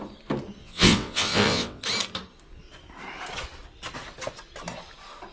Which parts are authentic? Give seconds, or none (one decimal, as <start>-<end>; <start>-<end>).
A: 0.0-0.6; 1.8-5.3